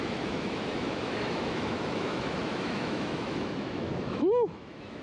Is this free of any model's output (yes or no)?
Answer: no